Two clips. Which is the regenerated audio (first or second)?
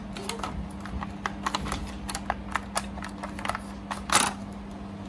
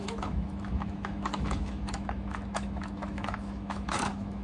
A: second